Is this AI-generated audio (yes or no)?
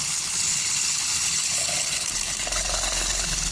yes